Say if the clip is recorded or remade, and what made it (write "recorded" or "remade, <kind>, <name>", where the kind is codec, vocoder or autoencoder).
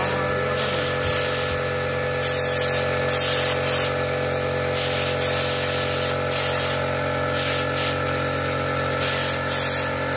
recorded